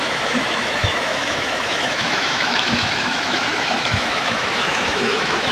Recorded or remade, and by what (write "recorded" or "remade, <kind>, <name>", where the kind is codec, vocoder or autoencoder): remade, autoencoder, DAC-VAE